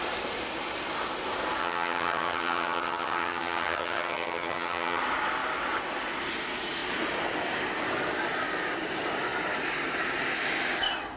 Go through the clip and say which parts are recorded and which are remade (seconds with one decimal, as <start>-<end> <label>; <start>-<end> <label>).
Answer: 0.0-1.6 recorded; 1.6-5.0 remade; 5.0-11.2 recorded